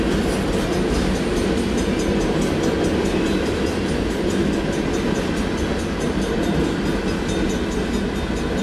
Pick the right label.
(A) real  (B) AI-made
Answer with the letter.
A